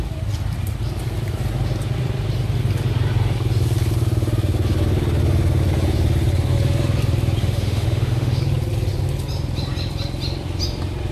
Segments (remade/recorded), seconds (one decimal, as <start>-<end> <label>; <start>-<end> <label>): 0.0-7.4 recorded; 7.4-8.4 remade; 8.4-11.1 recorded